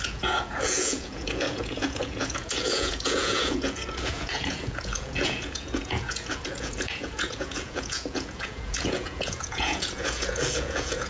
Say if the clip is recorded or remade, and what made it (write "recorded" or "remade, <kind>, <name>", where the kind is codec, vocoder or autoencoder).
remade, vocoder, Vocos